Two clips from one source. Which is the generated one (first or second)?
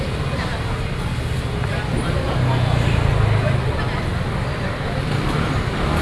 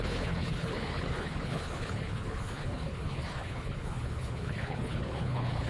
second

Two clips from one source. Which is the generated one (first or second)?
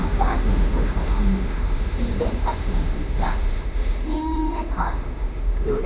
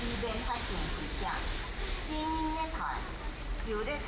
first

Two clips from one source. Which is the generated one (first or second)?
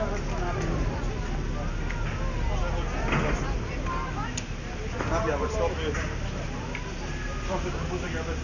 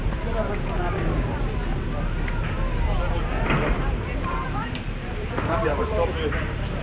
second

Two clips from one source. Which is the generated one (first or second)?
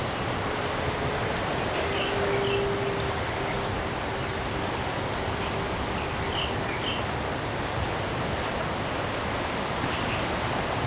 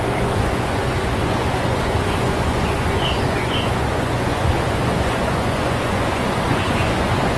second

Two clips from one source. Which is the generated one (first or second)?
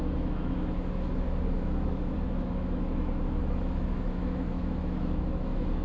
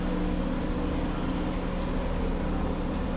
first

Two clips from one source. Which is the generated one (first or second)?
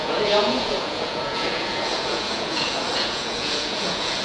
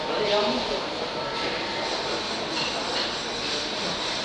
first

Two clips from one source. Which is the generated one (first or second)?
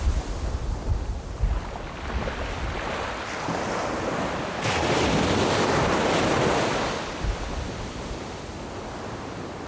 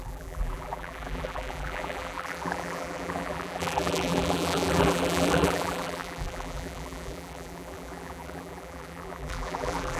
second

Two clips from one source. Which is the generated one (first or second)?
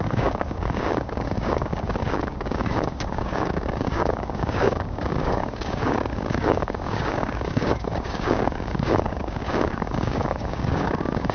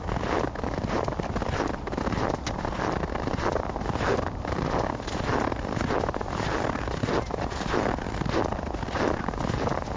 first